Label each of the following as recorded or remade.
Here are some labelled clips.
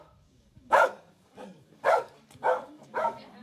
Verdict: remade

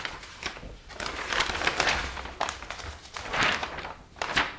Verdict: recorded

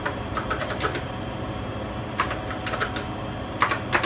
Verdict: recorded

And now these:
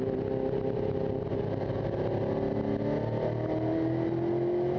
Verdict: recorded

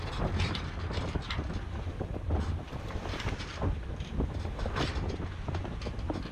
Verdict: recorded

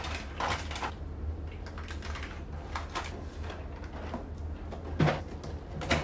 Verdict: recorded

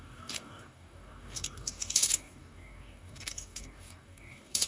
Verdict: remade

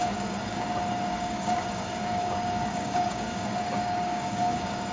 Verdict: remade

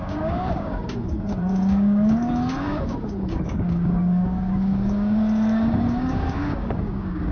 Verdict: remade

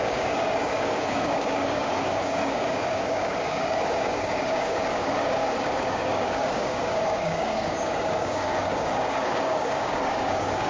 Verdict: remade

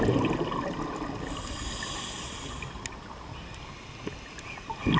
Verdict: recorded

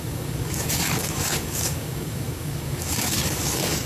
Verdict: remade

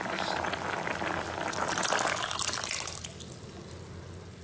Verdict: recorded